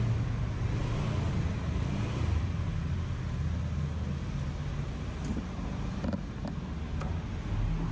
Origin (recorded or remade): recorded